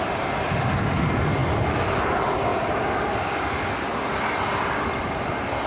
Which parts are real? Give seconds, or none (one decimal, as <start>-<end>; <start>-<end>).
0.0-5.7